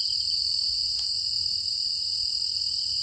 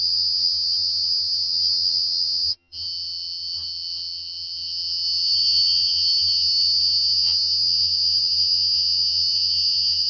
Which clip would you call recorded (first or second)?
first